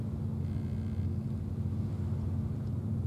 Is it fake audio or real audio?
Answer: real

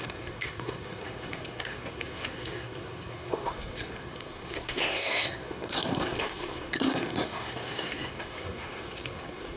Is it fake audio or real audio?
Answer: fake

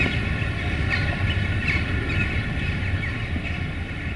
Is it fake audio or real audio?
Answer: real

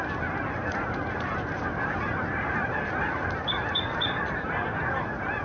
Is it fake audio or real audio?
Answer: fake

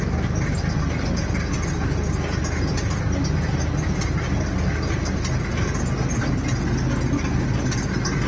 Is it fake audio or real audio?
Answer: real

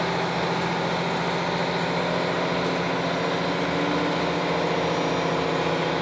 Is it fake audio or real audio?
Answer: real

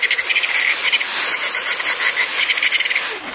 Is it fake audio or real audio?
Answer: real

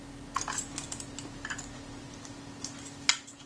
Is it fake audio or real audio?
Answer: real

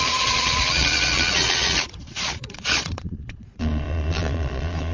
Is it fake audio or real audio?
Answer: fake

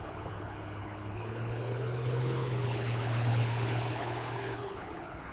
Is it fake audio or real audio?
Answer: fake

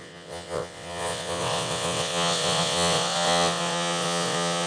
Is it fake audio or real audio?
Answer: fake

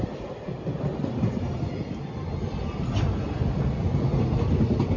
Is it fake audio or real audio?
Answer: real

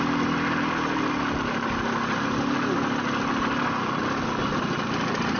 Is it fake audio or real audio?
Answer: real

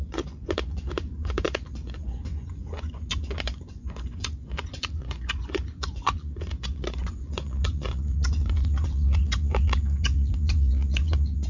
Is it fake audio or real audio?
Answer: fake